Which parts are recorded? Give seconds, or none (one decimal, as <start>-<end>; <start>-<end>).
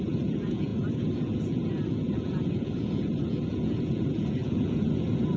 none